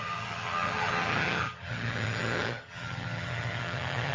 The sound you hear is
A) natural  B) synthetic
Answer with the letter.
B